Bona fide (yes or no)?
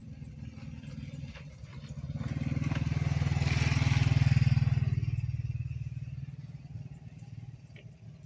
yes